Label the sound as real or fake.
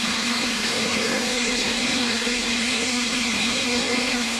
fake